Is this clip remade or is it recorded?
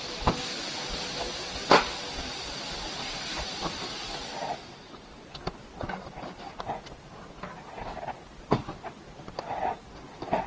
recorded